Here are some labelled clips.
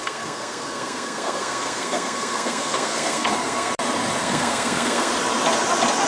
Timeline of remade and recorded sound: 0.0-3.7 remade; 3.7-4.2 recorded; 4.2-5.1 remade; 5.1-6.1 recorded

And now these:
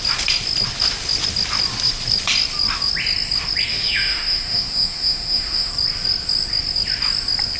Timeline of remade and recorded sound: 0.0-3.7 recorded; 3.7-5.7 remade; 5.7-7.6 recorded

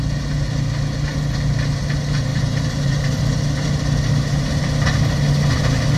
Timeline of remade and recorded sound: 0.0-2.3 recorded; 2.3-3.2 remade; 3.2-6.0 recorded

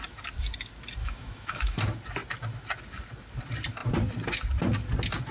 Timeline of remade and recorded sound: 0.0-1.0 recorded; 1.0-1.8 remade; 1.8-5.3 recorded

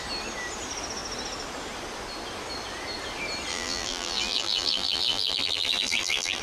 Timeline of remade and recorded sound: 0.0-3.5 recorded; 3.5-6.4 remade

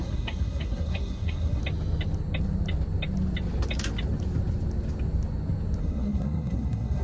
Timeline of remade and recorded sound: 0.0-1.6 remade; 1.6-5.8 recorded; 5.8-7.0 remade